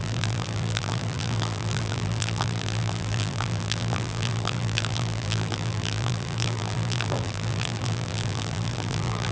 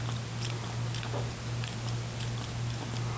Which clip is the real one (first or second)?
second